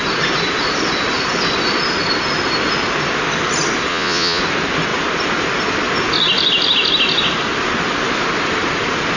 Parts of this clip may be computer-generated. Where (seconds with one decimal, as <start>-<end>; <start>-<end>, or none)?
3.9-4.4